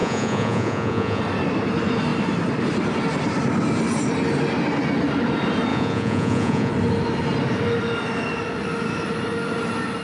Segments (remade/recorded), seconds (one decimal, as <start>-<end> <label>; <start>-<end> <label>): 0.0-1.2 remade; 1.2-5.7 recorded; 5.7-6.7 remade; 6.7-10.0 recorded